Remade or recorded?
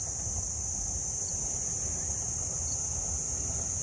recorded